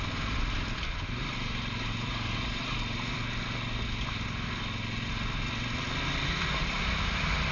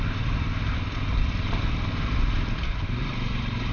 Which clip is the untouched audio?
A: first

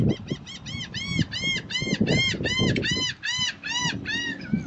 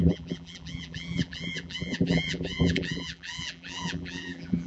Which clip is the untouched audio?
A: first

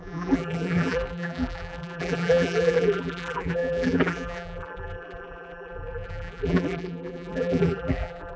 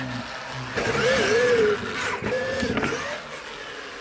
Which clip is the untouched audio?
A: second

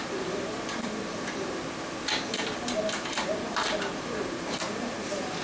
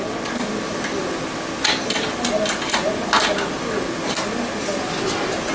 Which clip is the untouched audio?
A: second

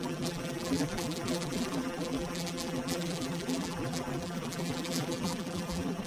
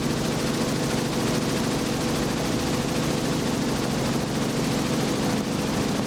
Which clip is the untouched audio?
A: second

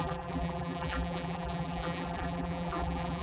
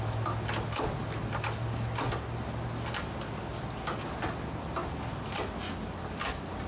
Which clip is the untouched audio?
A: second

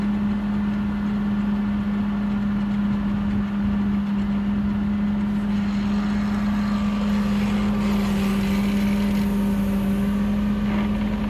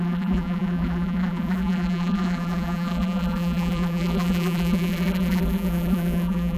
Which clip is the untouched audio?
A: first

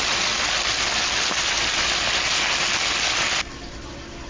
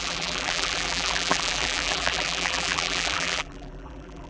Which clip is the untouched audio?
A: first